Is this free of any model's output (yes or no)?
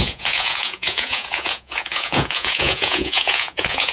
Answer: no